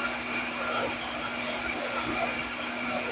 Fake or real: real